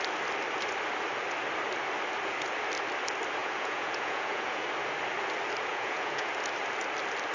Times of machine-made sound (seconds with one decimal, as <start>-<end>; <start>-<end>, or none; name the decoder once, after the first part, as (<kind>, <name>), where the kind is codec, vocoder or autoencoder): 3.4-4.6 (vocoder, Vocos); 5.7-6.3